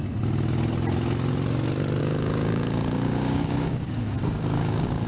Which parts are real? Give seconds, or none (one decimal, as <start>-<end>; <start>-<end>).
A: 0.0-2.0

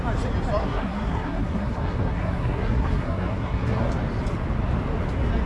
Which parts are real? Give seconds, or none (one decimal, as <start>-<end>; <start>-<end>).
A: 0.0-0.6; 3.9-5.5

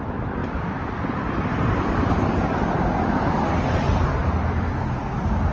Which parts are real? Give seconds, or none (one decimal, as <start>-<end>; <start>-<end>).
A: 0.0-5.5

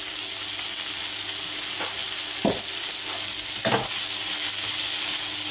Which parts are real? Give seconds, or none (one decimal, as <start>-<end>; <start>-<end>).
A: 0.0-5.5

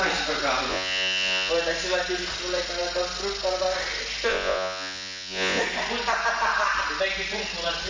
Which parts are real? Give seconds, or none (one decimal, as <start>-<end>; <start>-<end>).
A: 0.0-0.7; 1.5-4.3; 5.6-7.9

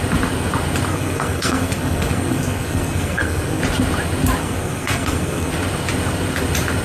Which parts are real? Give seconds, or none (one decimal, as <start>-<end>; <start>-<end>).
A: 0.0-0.9; 3.6-4.4; 5.5-6.8

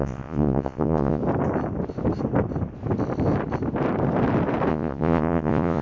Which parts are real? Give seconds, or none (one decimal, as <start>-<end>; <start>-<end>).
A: 1.2-4.7

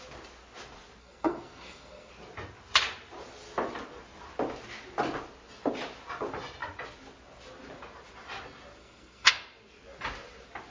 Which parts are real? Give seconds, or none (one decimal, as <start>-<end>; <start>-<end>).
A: 0.0-1.0; 2.1-8.8; 9.3-10.7